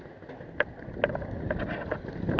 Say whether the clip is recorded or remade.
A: recorded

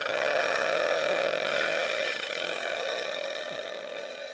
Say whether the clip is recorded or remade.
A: remade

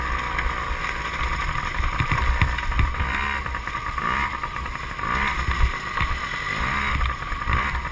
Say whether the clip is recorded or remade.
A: recorded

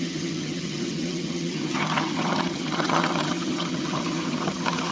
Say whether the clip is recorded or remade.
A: remade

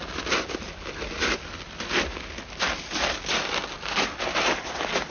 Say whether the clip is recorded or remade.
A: recorded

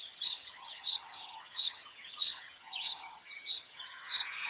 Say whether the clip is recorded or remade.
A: remade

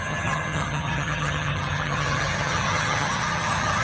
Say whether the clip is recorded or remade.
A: remade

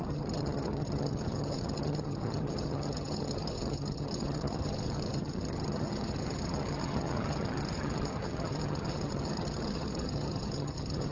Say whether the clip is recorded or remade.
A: remade